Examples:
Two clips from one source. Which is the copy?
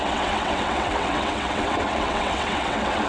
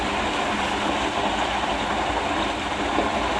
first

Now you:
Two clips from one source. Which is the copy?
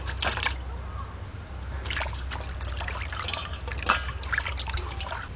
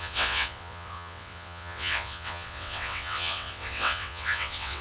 second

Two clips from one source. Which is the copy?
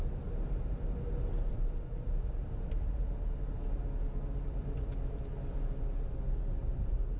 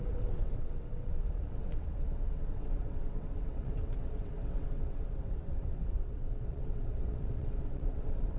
second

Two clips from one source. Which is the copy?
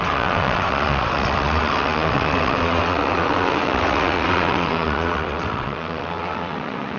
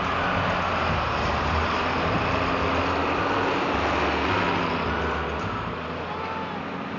first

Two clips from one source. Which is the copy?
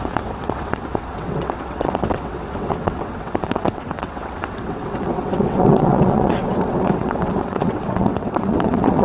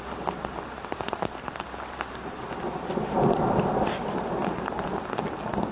first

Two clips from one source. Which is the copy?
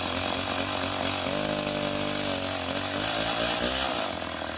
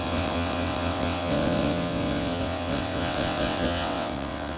second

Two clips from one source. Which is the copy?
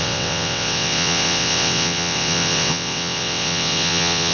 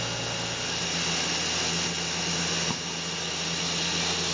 first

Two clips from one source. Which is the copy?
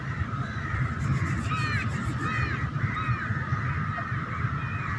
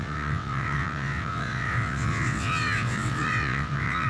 second